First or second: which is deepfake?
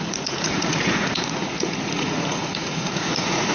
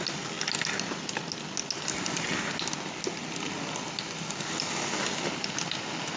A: first